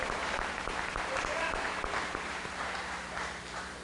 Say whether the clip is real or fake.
fake